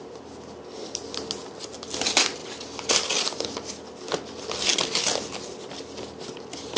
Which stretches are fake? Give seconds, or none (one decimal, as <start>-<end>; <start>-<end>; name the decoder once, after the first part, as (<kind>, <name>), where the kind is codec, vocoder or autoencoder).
none